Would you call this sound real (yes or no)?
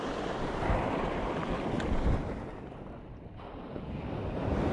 yes